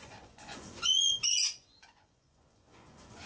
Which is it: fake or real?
fake